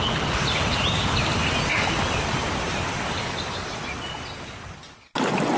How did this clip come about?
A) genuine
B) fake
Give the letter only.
A